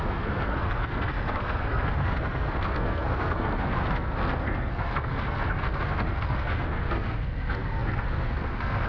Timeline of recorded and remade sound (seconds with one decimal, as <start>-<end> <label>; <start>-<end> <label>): 0.0-8.9 remade